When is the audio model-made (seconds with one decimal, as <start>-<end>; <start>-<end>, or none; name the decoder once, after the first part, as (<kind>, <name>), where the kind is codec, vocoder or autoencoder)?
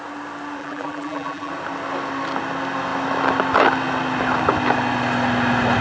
0.6-1.5 (vocoder, BigVGAN v2)